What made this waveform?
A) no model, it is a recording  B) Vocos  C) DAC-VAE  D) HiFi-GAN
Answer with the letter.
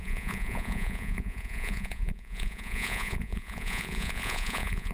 B